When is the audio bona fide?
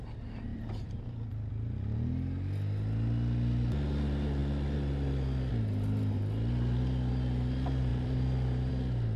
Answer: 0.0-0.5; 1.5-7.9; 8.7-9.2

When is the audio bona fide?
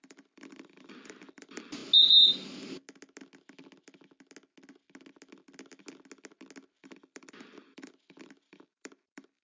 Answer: 1.8-6.8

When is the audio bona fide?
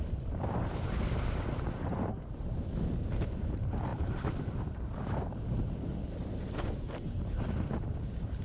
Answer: 5.9-6.4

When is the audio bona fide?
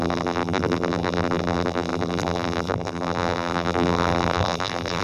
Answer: none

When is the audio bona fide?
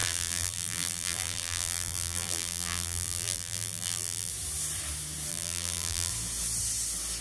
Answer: 4.3-5.3; 6.1-7.2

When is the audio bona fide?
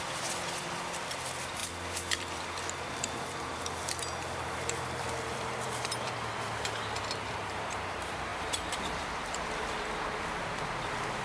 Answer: none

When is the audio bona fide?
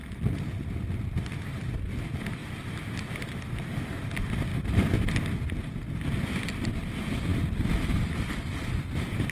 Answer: 0.0-2.4; 2.9-4.5; 5.0-7.3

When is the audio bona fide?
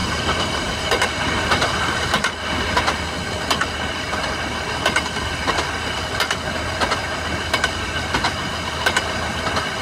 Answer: 1.2-9.8